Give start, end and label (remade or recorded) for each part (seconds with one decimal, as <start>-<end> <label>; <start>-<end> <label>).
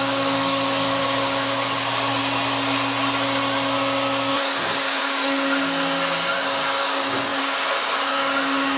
0.0-2.2 remade; 2.2-4.3 recorded; 4.3-8.8 remade